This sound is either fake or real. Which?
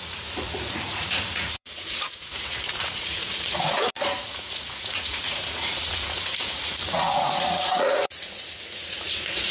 fake